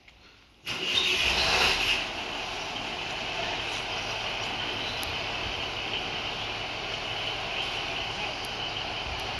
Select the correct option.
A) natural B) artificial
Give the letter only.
A